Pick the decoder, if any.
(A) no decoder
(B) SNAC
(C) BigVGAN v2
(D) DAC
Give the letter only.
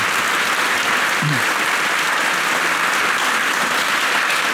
A